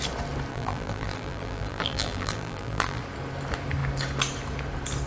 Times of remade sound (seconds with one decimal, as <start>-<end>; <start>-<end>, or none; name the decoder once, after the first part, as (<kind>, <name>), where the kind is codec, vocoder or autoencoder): 0.5-3.0 (vocoder, BigVGAN v2)